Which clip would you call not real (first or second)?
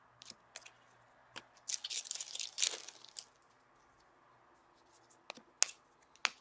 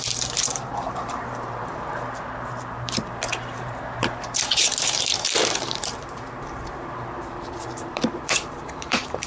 second